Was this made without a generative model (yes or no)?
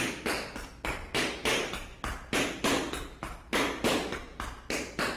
yes